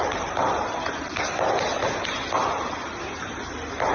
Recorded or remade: recorded